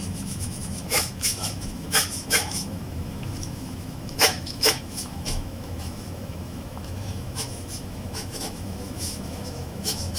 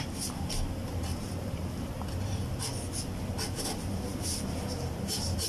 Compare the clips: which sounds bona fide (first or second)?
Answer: second